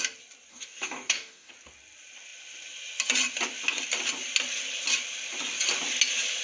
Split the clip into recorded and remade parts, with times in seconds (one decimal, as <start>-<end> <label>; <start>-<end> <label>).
0.0-0.5 recorded; 0.5-1.5 remade; 1.5-6.4 recorded